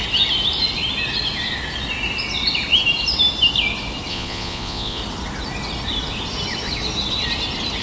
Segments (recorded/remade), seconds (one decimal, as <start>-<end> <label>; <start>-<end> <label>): 0.0-4.1 recorded; 4.1-5.0 remade; 5.0-7.8 recorded